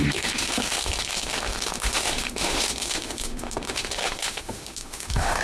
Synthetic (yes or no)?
yes